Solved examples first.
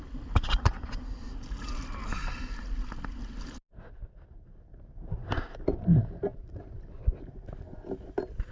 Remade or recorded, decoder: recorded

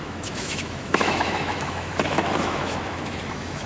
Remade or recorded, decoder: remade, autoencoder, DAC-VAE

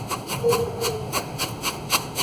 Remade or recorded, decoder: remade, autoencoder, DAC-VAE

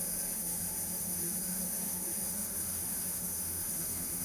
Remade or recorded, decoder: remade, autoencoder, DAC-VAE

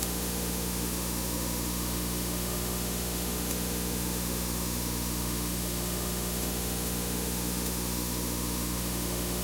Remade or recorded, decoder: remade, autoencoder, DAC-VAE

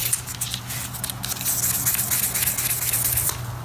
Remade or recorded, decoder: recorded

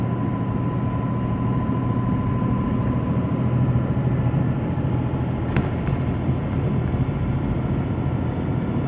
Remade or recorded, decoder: recorded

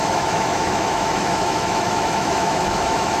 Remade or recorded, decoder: remade, autoencoder, DAC-VAE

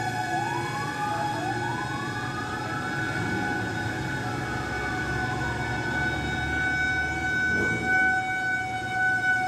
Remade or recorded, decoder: recorded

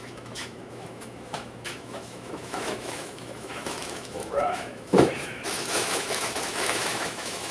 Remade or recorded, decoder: remade, autoencoder, DAC-VAE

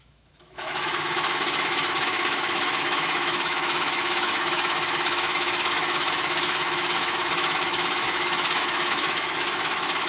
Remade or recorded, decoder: remade, autoencoder, DAC-VAE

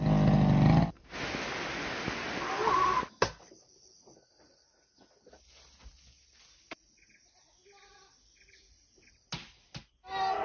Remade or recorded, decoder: recorded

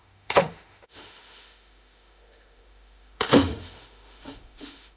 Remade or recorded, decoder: remade, autoencoder, DAC-VAE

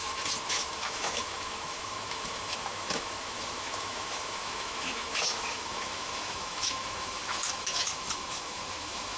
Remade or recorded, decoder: remade, autoencoder, DAC-VAE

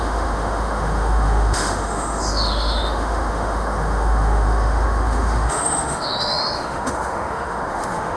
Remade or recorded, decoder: remade, autoencoder, DAC-VAE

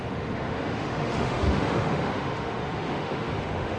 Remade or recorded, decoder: remade, autoencoder, DAC-VAE